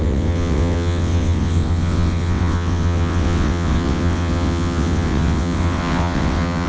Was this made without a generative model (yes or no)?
no